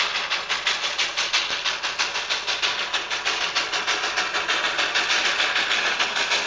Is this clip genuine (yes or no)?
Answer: yes